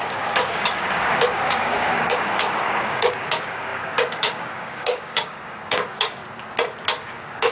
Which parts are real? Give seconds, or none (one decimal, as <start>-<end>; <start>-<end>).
6.2-7.1